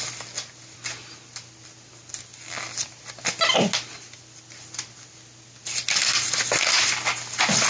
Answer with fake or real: real